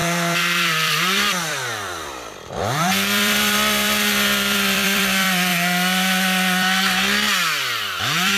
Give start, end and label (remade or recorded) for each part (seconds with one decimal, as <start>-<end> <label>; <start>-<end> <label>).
0.0-5.5 remade; 5.5-8.0 recorded; 8.0-8.4 remade